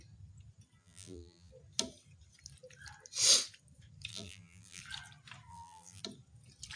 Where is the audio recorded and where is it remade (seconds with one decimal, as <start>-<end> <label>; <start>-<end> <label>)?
0.0-0.8 recorded; 0.8-1.5 remade; 1.5-4.1 recorded; 4.1-4.8 remade; 4.8-5.5 recorded; 5.5-6.0 remade; 6.0-6.8 recorded